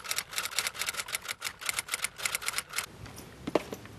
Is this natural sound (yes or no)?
yes